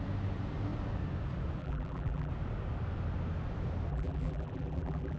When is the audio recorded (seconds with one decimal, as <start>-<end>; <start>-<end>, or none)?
0.0-1.6; 2.3-3.9